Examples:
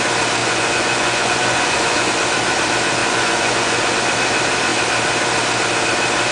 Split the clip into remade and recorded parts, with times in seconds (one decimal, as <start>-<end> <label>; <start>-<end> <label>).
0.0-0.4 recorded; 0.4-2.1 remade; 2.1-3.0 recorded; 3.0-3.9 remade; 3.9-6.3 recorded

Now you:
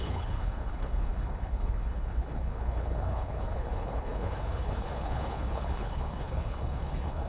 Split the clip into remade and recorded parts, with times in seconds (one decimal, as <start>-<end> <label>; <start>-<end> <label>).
0.0-7.3 remade

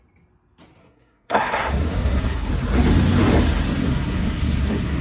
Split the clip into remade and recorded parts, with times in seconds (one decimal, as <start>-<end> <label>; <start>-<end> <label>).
0.0-0.8 recorded; 0.8-2.5 remade; 2.5-3.8 recorded; 3.8-5.0 remade

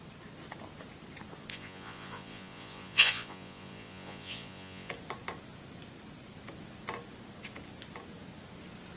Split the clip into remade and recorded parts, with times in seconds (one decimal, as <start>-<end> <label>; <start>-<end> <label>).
0.0-1.5 recorded; 1.5-4.9 remade; 4.9-9.0 recorded

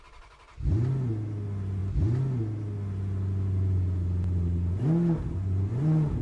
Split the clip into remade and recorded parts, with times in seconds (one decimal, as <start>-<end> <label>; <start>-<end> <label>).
0.0-6.2 recorded